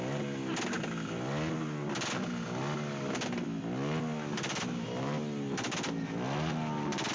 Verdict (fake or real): real